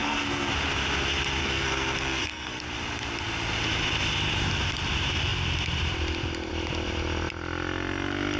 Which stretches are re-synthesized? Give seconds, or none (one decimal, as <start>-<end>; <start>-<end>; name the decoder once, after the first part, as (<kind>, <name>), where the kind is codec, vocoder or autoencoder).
0.0-0.5 (codec, SNAC); 1.4-2.6